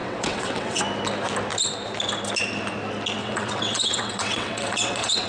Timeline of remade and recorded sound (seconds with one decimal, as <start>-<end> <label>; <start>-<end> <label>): 0.0-0.8 remade; 0.8-3.2 recorded; 3.2-5.3 remade